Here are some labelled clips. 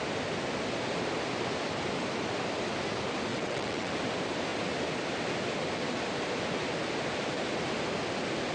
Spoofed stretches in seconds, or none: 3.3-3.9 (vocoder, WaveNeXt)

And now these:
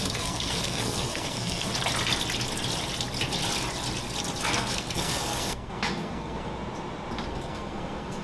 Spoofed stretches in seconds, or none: 0.0-1.7 (codec, SNAC); 4.4-6.5; 7.3-8.2

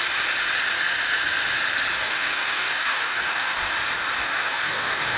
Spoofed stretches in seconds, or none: 2.0-3.7 (codec, DAC); 4.2-5.2

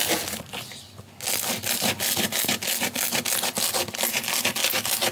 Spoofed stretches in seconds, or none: none

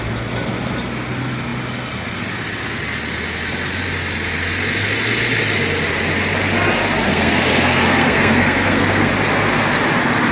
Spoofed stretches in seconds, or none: 7.1-9.1 (codec, SNAC)

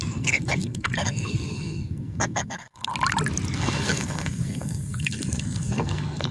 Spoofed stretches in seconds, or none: 0.0-2.9 (codec, SNAC); 3.5-6.3

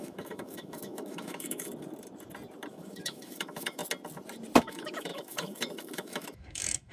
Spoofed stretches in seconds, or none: 0.0-1.7 (autoencoder, DAC-VAE); 2.7-3.8; 4.6-6.9